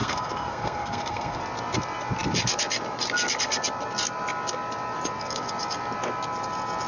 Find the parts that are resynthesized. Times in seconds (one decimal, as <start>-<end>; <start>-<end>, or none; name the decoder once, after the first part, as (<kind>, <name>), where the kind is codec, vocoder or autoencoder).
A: 0.0-1.4 (codec, SNAC)